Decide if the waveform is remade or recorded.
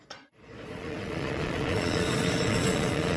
remade